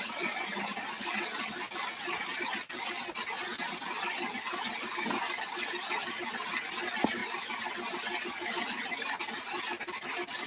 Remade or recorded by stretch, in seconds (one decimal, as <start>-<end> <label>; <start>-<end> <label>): 0.0-10.5 recorded